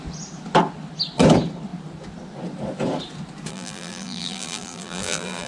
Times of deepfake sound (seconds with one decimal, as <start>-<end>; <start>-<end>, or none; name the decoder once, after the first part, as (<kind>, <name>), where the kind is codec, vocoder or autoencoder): 3.5-5.5 (vocoder, BigVGAN v2)